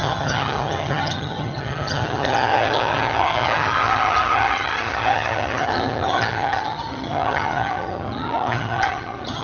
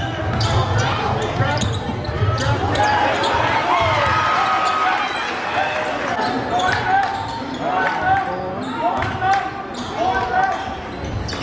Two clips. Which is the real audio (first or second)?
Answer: second